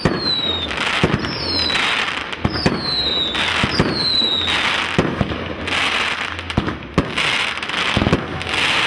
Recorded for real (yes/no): yes